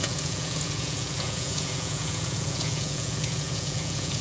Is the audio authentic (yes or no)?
no